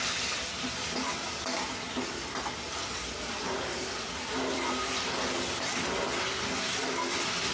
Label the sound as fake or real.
real